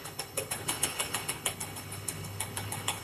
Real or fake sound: fake